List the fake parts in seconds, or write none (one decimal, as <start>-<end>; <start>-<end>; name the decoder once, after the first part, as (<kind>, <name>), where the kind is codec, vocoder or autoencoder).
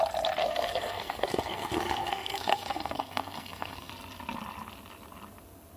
0.4-3.9 (codec, SNAC)